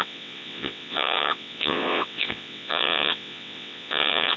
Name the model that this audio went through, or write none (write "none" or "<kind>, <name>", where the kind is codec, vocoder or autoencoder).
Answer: vocoder, WaveNeXt